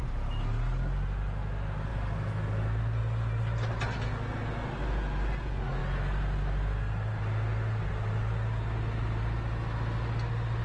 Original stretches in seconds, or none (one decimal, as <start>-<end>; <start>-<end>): 0.0-10.6